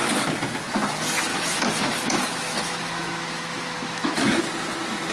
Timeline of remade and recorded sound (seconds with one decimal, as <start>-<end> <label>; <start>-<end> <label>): 0.0-1.3 recorded; 1.3-4.4 remade; 4.4-5.1 recorded